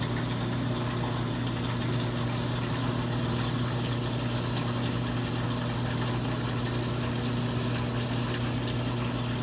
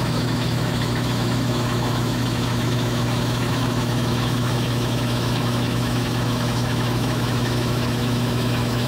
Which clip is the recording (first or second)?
first